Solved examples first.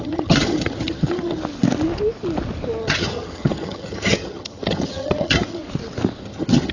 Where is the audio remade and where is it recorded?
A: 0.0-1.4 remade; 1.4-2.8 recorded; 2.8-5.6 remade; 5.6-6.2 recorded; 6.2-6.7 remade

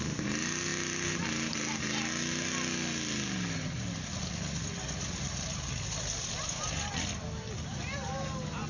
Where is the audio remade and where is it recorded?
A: 0.0-8.7 recorded

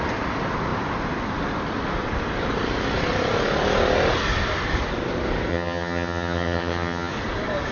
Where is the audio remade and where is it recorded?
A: 0.0-5.5 recorded; 5.5-7.1 remade; 7.1-7.7 recorded

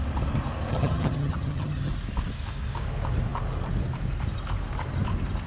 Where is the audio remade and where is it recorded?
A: 0.0-0.7 recorded; 0.7-1.9 remade; 1.9-5.5 recorded

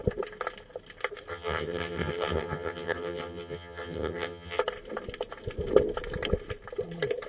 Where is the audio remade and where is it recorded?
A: 0.0-1.3 recorded; 1.3-4.6 remade; 4.6-7.3 recorded

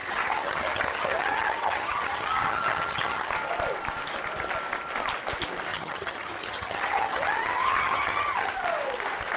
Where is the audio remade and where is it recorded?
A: 0.0-3.3 remade; 3.3-5.7 recorded; 5.7-8.5 remade; 8.5-9.4 recorded

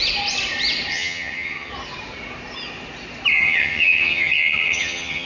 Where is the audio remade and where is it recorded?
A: 0.0-0.9 recorded; 0.9-1.7 remade; 1.7-3.3 recorded; 3.3-5.3 remade

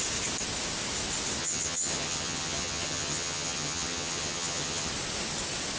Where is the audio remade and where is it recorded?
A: 0.0-1.4 recorded; 1.4-4.9 remade; 4.9-5.8 recorded